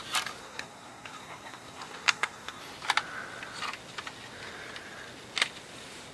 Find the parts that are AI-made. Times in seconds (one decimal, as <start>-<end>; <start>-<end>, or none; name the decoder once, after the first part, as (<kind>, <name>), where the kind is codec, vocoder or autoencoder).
0.4-2.6 (codec, SNAC)